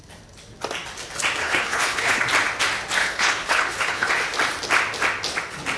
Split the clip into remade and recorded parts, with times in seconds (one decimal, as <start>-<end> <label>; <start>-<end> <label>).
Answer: 0.0-1.4 recorded; 1.4-2.2 remade; 2.2-3.0 recorded; 3.0-4.1 remade; 4.1-5.8 recorded